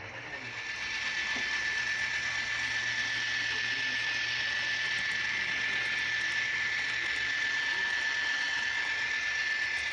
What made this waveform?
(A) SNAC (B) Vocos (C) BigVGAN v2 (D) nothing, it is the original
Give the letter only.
D